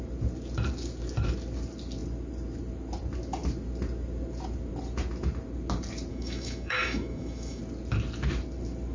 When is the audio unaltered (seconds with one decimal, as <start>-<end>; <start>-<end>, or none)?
0.0-6.1; 7.6-8.9